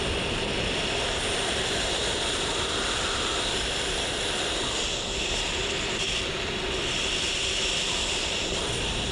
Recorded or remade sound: recorded